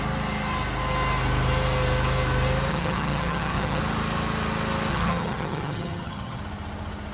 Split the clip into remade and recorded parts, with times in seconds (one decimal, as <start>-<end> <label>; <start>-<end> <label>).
0.0-2.7 recorded; 2.7-3.8 remade; 3.8-4.9 recorded; 4.9-6.4 remade; 6.4-7.1 recorded